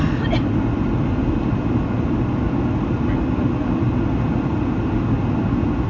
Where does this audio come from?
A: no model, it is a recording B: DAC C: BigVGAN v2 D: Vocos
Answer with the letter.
A